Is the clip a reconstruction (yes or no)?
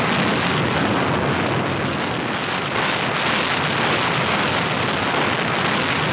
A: no